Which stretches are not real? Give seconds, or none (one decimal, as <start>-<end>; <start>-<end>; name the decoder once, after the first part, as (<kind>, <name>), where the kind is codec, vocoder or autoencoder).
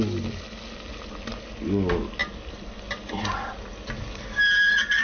none